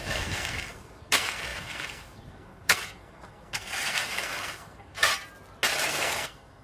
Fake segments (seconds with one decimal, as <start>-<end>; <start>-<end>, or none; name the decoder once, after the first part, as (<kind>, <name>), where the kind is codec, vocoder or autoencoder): 0.0-5.1 (codec, SNAC); 5.9-6.6